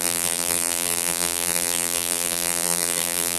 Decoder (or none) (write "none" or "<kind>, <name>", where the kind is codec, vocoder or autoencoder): vocoder, BigVGAN v2